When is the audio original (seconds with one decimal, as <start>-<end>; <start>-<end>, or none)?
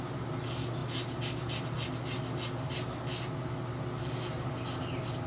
0.0-5.3